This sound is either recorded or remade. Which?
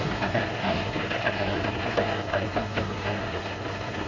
remade